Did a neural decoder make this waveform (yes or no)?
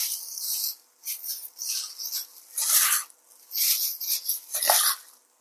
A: no